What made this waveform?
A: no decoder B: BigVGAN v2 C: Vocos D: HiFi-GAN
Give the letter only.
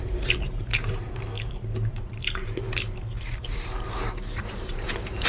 B